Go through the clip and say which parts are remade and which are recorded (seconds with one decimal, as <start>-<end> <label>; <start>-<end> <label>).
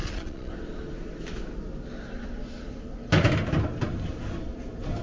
0.0-0.5 remade; 0.5-5.0 recorded